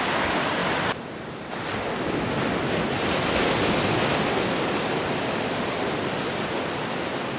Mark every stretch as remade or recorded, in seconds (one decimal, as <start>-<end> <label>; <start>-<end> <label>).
0.0-7.4 recorded